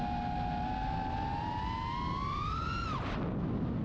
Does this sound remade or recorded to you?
recorded